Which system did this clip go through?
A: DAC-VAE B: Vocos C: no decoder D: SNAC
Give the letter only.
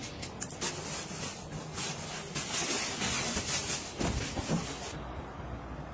C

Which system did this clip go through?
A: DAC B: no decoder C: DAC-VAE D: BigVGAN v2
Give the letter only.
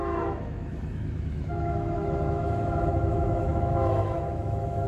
C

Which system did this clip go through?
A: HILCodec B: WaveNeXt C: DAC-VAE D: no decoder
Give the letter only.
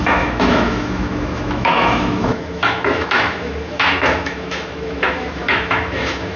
C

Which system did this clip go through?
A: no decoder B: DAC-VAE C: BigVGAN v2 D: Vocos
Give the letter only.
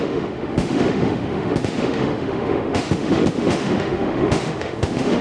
B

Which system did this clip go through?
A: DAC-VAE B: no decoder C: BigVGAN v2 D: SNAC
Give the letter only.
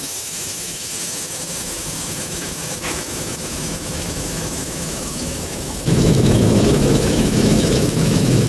A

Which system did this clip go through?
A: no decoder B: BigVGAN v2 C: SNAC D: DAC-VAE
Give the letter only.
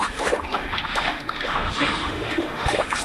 D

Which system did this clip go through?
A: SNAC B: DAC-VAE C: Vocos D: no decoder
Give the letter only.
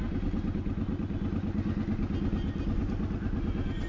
D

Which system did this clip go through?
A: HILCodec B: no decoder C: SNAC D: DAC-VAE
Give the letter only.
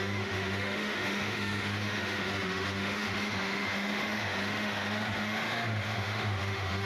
D